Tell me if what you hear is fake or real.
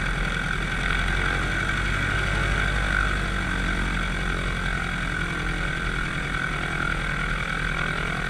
real